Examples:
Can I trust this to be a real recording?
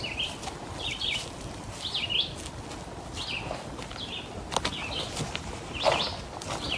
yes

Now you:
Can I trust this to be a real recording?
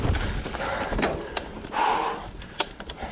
yes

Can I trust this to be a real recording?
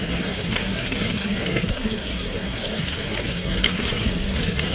no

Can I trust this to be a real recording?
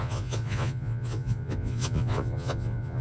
no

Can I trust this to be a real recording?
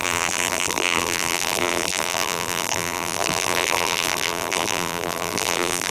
no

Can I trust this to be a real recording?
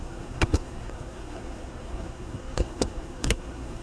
no